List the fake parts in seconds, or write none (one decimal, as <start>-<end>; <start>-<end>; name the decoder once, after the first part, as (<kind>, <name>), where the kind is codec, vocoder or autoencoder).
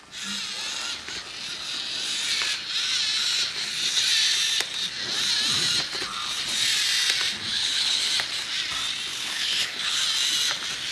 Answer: 7.5-8.1 (codec, HILCodec); 9.1-10.0